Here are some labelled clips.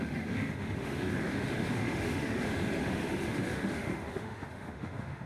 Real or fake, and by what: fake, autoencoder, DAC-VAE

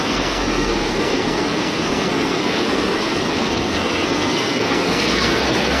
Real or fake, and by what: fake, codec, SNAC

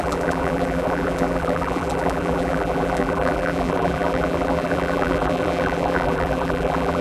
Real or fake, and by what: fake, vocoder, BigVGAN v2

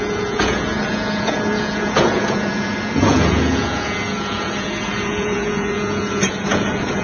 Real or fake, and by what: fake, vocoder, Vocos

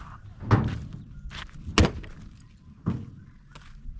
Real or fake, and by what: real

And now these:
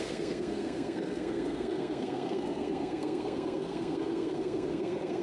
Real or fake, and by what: fake, codec, SNAC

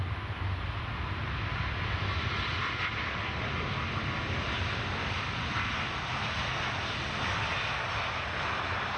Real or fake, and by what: real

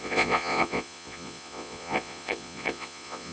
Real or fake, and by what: fake, vocoder, Vocos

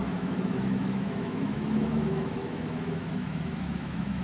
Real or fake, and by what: fake, autoencoder, DAC-VAE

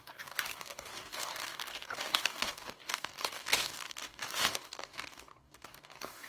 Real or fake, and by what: fake, codec, DAC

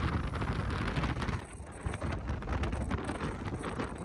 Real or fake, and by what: real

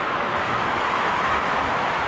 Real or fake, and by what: fake, autoencoder, DAC-VAE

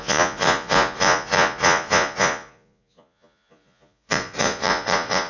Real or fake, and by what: fake, vocoder, Vocos